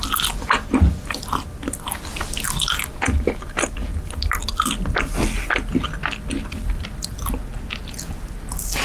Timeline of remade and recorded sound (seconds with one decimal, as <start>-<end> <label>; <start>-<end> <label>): 0.0-8.8 recorded

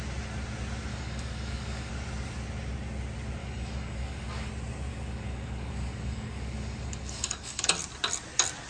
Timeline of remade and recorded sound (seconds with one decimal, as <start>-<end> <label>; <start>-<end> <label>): 0.0-0.9 recorded; 0.9-1.9 remade; 1.9-3.4 recorded; 3.4-4.5 remade; 4.5-4.9 recorded; 4.9-7.7 remade; 7.7-8.7 recorded

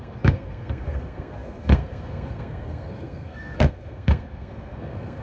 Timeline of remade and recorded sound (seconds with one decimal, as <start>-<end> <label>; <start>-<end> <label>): 0.0-5.2 remade

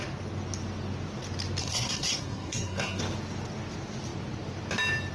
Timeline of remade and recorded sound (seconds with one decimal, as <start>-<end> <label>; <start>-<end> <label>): 0.0-1.6 recorded; 1.6-3.0 remade; 3.0-5.1 recorded

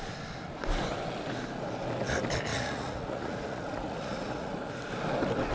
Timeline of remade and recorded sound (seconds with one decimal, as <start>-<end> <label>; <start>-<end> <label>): 0.0-2.5 recorded; 2.5-4.5 remade; 4.5-5.5 recorded